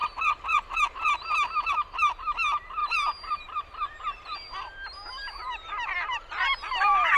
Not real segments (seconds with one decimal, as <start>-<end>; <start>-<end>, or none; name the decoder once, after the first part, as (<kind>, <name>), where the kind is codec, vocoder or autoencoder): 2.8-7.2 (vocoder, BigVGAN v2)